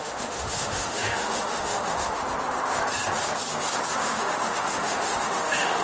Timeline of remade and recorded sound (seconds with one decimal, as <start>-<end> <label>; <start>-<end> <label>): 0.0-2.2 remade; 2.2-3.9 recorded; 3.9-5.8 remade